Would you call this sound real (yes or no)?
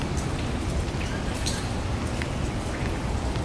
yes